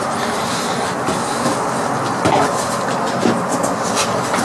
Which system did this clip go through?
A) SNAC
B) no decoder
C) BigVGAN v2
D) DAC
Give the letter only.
B